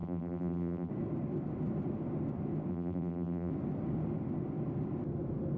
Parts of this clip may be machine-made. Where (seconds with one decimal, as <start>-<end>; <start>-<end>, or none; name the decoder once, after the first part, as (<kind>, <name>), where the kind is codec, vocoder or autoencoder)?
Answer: 0.0-0.9 (vocoder, BigVGAN v2); 2.7-3.5